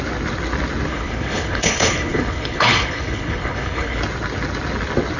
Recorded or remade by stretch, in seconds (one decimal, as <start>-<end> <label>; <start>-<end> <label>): 0.0-0.9 recorded; 0.9-4.0 remade; 4.0-5.2 recorded